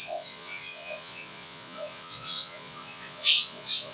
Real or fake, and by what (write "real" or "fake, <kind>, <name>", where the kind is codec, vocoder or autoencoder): fake, vocoder, Vocos